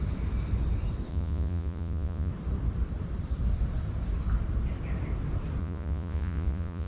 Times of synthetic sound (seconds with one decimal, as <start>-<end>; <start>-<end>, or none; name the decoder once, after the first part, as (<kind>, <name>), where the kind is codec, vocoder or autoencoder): 1.1-2.3 (vocoder, Vocos); 5.6-6.9